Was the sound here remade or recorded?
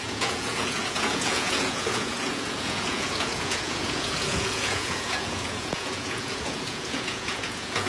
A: remade